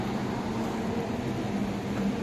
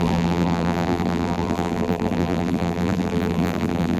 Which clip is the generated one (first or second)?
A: second